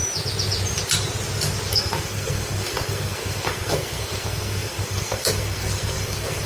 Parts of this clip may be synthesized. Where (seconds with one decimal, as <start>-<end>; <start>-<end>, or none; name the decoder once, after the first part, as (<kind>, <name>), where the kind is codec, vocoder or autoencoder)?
1.7-6.5 (codec, SNAC)